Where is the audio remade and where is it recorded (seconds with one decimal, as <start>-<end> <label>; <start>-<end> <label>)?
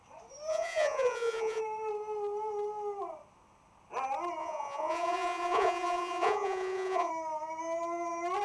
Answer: 0.0-0.5 recorded; 0.5-1.6 remade; 1.6-4.4 recorded; 4.4-7.1 remade; 7.1-8.4 recorded